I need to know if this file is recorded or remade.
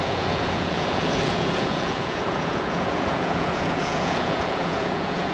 remade